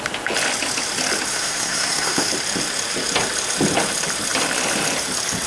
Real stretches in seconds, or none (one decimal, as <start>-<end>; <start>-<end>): 0.0-1.3; 2.3-5.5